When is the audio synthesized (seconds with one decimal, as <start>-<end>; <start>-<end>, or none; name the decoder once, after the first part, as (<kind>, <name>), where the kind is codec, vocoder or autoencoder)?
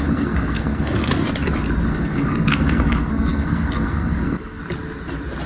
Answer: 0.0-1.1 (codec, SNAC); 1.9-4.6